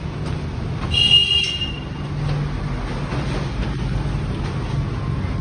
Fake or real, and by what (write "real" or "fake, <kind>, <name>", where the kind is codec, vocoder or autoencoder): real